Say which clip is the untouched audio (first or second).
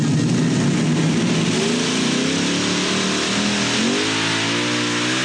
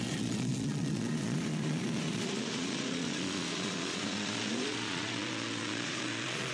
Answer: first